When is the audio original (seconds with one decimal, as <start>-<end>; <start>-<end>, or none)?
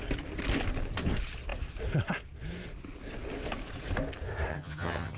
0.0-4.5